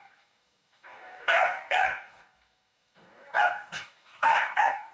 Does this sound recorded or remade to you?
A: remade